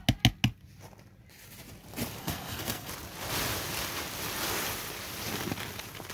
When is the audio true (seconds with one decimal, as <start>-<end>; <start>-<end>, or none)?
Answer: 0.0-2.2; 2.9-6.1